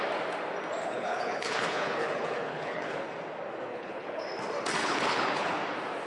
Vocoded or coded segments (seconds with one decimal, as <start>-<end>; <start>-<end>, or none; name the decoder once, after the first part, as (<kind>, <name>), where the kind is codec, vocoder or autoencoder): 0.8-3.1 (codec, HILCodec); 3.7-4.2; 4.8-5.6